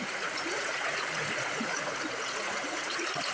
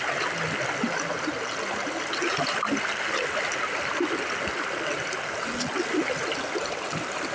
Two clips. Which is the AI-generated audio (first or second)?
first